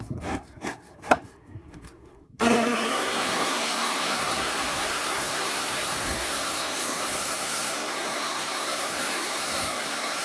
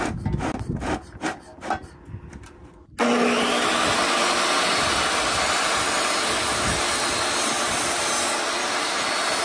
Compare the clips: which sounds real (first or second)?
second